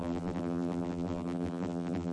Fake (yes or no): yes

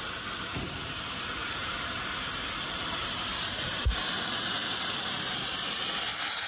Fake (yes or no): no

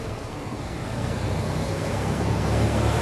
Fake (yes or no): yes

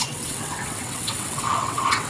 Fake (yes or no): yes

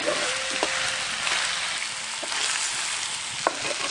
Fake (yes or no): no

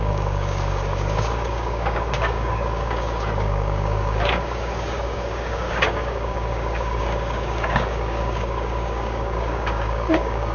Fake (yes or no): yes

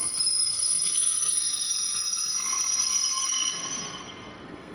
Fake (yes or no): yes